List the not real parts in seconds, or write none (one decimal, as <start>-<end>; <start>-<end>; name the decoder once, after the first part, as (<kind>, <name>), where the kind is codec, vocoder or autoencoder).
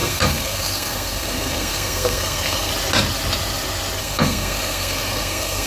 0.0-2.7 (codec, SNAC); 4.0-5.7